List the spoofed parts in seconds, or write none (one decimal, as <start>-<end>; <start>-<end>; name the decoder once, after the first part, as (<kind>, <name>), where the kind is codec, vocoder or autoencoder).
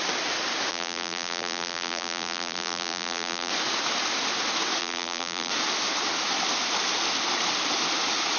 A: 0.7-3.5 (vocoder, BigVGAN v2); 4.8-5.5